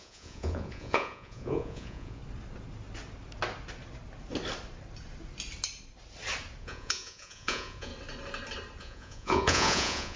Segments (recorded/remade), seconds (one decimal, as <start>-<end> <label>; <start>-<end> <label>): 0.0-2.2 remade; 2.2-6.6 recorded; 6.6-7.9 remade; 7.9-8.8 recorded; 8.8-10.2 remade